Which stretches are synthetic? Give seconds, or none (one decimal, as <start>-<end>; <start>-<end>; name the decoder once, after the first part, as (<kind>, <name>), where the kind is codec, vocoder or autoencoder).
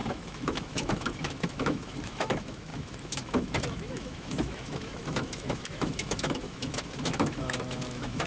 0.0-8.3 (autoencoder, DAC-VAE)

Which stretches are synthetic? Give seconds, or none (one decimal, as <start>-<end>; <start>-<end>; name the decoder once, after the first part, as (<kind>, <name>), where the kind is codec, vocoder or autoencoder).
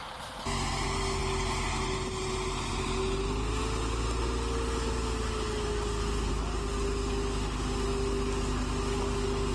none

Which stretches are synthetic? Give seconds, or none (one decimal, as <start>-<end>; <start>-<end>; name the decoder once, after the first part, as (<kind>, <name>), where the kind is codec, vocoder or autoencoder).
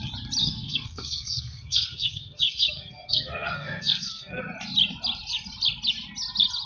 0.4-4.4 (codec, SNAC)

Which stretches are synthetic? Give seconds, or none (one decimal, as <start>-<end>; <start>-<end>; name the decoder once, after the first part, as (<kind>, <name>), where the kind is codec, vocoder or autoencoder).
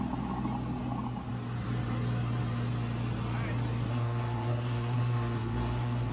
3.9-6.1 (codec, SNAC)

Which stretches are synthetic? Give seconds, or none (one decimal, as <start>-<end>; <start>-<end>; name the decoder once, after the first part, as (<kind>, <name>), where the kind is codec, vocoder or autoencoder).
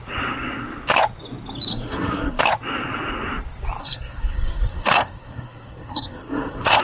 1.7-2.4 (codec, SNAC); 3.8-6.8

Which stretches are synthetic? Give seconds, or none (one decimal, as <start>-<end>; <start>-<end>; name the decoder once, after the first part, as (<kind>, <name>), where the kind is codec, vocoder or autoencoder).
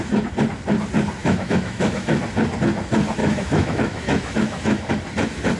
1.2-2.2 (autoencoder, DAC-VAE); 3.2-4.9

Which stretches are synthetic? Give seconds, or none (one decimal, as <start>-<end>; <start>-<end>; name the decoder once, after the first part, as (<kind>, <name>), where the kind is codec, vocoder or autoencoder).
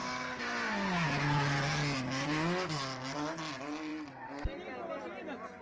none